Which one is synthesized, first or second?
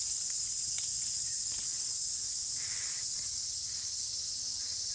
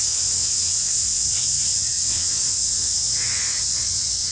second